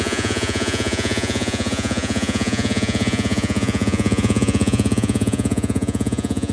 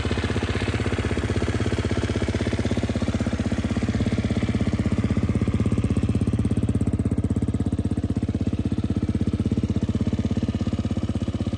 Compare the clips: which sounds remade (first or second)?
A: first